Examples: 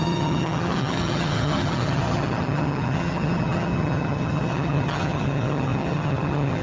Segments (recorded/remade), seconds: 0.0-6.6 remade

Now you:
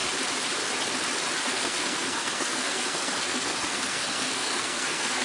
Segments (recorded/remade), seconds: 0.0-1.4 recorded; 1.4-5.2 remade

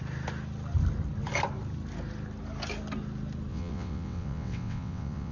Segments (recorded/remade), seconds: 0.0-3.5 recorded; 3.5-5.3 remade

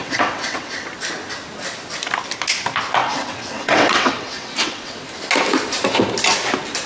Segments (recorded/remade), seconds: 0.0-0.9 remade; 0.9-3.0 recorded; 3.0-5.0 remade; 5.0-6.9 recorded

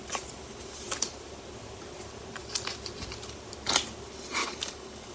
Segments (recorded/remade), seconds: 0.0-4.4 recorded; 4.4-5.1 remade